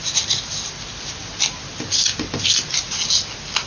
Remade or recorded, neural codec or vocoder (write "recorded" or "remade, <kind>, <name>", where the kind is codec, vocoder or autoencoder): recorded